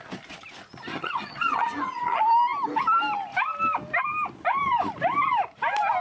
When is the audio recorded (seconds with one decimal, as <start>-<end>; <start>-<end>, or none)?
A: 0.0-0.9; 2.2-6.0